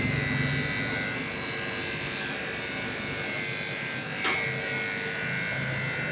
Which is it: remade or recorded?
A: recorded